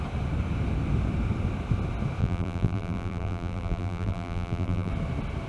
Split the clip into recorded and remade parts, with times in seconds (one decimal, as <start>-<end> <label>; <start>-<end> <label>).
0.0-2.2 recorded; 2.2-4.9 remade; 4.9-5.5 recorded